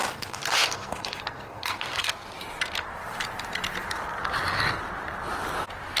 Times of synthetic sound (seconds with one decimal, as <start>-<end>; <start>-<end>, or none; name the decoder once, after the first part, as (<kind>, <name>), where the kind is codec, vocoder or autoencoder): 0.0-2.1 (codec, SNAC)